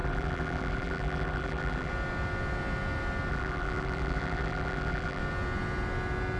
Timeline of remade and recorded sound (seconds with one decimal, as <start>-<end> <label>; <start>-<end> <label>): 0.0-1.9 remade; 1.9-3.3 recorded; 3.3-5.2 remade; 5.2-6.4 recorded